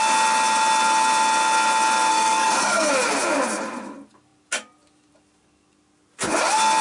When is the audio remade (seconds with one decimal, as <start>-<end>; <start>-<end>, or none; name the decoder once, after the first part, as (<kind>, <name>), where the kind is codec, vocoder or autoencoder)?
2.1-2.9 (codec, SNAC)